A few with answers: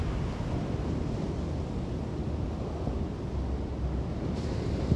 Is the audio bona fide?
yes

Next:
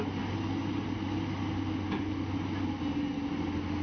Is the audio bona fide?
yes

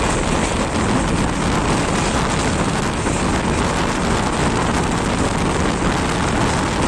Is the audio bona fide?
yes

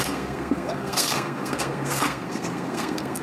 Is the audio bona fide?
no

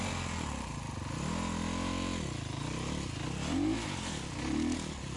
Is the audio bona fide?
yes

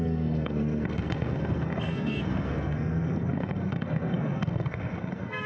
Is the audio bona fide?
no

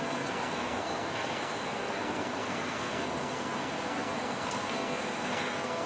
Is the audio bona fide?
no